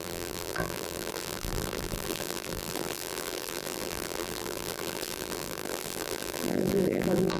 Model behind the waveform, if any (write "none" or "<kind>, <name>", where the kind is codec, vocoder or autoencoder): vocoder, BigVGAN v2